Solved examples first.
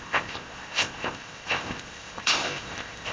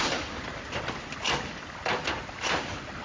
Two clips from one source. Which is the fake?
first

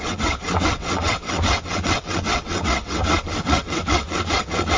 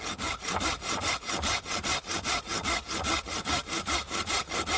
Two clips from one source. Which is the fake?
first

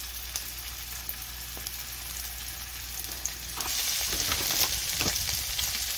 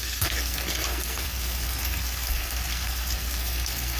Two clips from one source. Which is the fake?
second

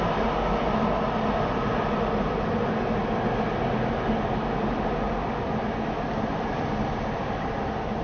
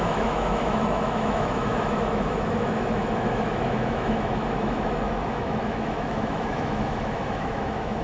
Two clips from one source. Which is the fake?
second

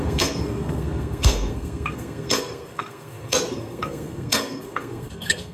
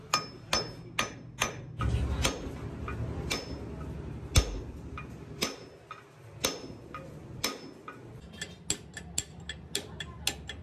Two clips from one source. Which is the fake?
first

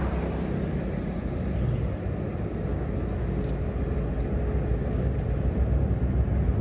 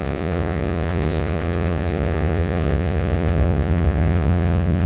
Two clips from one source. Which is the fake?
second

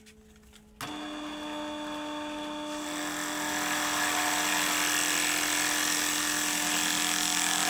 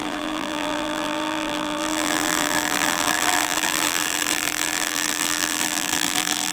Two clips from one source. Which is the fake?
second